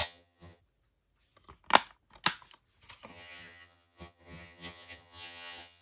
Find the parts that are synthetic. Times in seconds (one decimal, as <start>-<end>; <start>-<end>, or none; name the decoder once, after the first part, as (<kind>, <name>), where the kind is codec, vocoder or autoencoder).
0.0-0.6 (vocoder, HiFi-GAN); 3.1-5.8